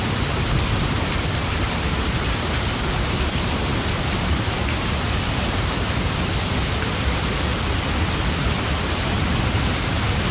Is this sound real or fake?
real